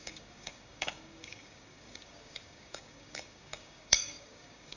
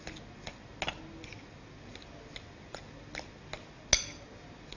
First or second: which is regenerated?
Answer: first